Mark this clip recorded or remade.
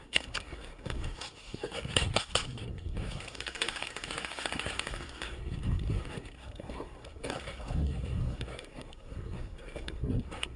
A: remade